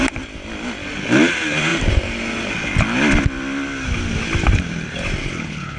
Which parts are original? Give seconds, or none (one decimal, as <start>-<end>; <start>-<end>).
0.0-5.2